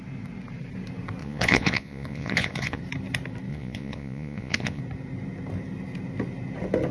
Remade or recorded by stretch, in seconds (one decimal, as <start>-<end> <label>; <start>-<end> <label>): 0.0-1.2 recorded; 1.2-2.8 remade; 2.8-3.5 recorded; 3.5-4.8 remade; 4.8-6.9 recorded